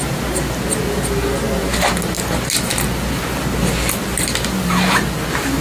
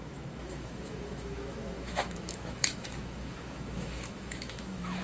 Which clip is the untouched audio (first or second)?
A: first